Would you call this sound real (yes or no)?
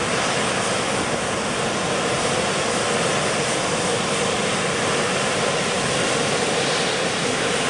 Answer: yes